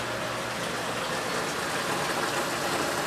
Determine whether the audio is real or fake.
real